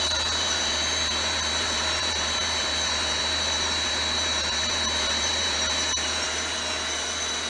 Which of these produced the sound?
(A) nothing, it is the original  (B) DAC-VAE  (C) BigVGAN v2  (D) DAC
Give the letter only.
C